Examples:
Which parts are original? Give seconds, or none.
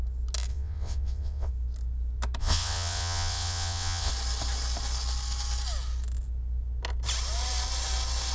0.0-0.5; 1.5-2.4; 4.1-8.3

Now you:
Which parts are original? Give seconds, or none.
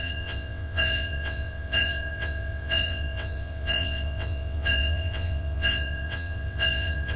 none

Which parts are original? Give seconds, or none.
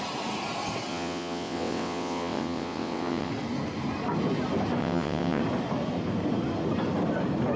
0.0-0.9; 3.3-4.8; 5.4-7.6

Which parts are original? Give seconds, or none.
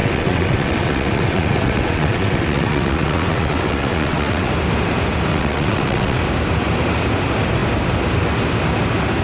4.5-5.3; 6.2-9.2